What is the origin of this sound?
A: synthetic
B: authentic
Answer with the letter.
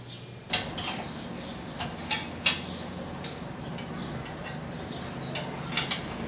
B